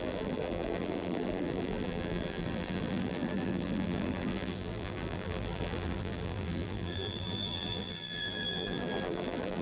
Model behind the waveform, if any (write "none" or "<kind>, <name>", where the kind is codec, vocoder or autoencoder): vocoder, BigVGAN v2